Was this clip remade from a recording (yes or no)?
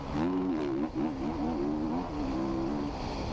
no